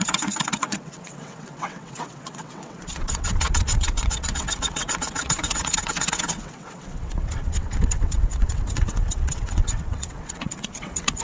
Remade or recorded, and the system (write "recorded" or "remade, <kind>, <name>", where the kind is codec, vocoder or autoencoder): remade, vocoder, WaveNeXt